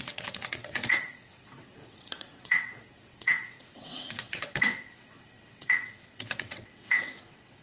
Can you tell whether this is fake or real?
fake